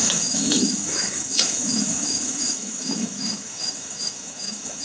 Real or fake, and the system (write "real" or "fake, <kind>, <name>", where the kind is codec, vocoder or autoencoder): fake, autoencoder, DAC-VAE